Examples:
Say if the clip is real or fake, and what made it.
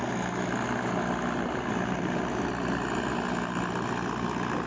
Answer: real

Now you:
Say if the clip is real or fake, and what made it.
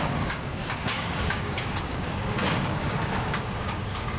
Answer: fake, codec, DAC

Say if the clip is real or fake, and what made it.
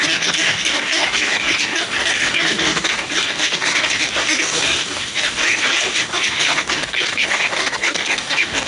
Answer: fake, codec, DAC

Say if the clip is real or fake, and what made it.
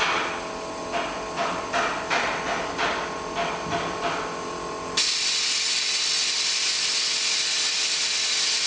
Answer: real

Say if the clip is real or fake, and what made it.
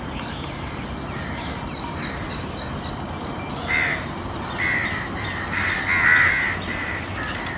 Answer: real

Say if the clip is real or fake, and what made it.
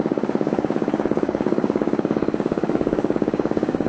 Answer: fake, codec, DAC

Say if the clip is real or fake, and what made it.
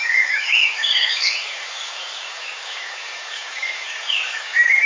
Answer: fake, codec, DAC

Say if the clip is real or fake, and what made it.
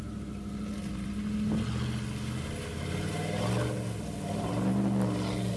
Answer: real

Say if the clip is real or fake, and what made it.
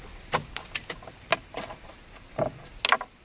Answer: real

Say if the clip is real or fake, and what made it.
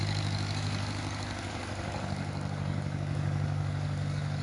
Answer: fake, codec, DAC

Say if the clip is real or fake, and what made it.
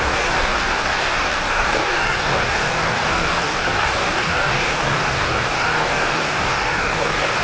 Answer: fake, codec, DAC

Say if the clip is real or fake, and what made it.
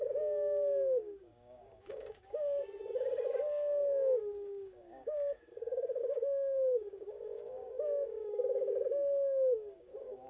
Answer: fake, codec, DAC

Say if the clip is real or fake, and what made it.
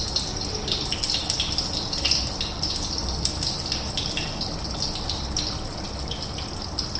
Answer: real